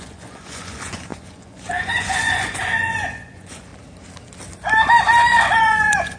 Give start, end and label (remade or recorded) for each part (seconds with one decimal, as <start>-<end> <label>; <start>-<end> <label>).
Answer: 0.0-3.7 remade; 3.7-5.6 recorded; 5.6-6.2 remade